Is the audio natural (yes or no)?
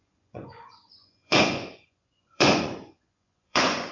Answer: no